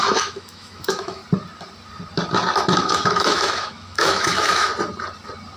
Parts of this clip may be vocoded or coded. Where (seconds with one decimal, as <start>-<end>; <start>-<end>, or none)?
0.0-1.2; 2.8-4.7